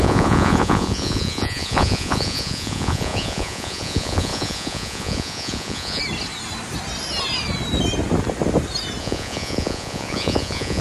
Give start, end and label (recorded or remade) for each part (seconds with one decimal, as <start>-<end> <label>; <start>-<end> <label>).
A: 0.0-6.0 remade; 6.0-9.0 recorded; 9.0-10.8 remade